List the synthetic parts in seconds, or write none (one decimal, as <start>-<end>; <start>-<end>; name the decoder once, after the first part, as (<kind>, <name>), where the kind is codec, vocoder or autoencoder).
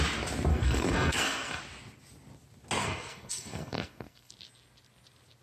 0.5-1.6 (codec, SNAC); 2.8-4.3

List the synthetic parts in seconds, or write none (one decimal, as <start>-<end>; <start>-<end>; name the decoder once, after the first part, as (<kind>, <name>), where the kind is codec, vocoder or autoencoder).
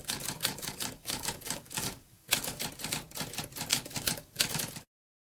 0.0-2.6 (codec, DAC); 3.7-4.7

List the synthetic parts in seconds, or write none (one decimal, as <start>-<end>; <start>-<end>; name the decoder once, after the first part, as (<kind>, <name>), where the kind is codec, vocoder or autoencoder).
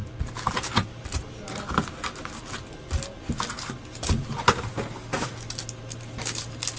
none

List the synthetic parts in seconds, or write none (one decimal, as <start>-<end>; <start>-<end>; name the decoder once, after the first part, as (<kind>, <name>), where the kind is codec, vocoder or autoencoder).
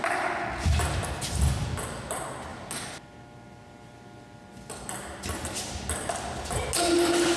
none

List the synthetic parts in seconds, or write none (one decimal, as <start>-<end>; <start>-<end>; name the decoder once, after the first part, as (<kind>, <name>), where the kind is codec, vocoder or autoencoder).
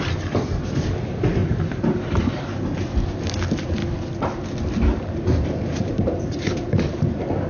0.0-3.8 (vocoder, BigVGAN v2); 4.9-7.5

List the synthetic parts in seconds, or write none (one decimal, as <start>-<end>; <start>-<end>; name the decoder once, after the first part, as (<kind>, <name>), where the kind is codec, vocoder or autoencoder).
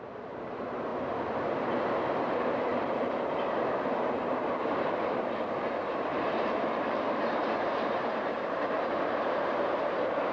0.0-0.9 (vocoder, BigVGAN v2); 2.2-10.3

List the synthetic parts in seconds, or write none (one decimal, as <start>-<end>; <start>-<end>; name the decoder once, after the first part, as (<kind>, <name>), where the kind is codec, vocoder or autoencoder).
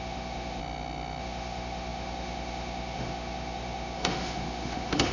0.0-0.6 (autoencoder, DAC-VAE); 1.2-5.1